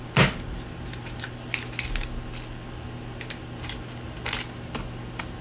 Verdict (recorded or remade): recorded